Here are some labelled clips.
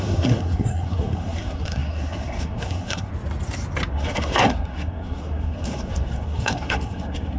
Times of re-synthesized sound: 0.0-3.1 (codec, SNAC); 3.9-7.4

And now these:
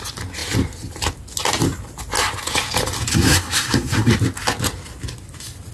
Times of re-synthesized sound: 3.1-4.1 (codec, SNAC)

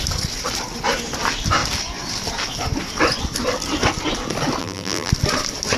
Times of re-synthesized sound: 4.6-5.1 (vocoder, BigVGAN v2)

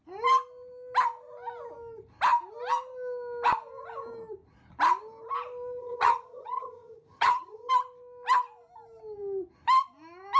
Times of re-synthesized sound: 5.8-7.7 (vocoder, HiFi-GAN)

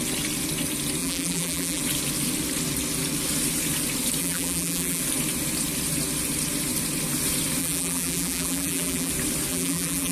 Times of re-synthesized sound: 1.0-1.8 (vocoder, BigVGAN v2); 4.2-5.0; 7.6-9.1; 9.5-10.1

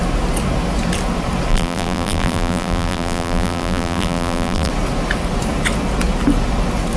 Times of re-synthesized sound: 1.5-4.7 (vocoder, BigVGAN v2)